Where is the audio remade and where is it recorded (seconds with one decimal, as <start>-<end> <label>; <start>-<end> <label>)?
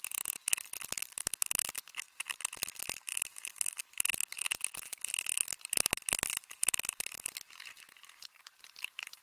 0.0-9.2 remade